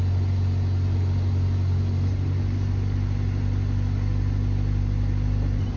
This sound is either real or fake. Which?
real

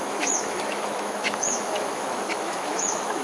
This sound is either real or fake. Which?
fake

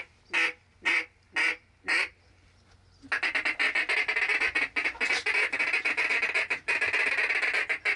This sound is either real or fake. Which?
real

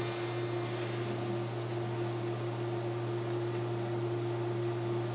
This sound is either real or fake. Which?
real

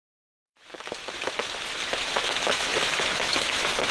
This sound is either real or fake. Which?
fake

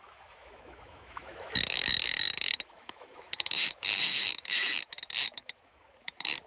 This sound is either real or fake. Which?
fake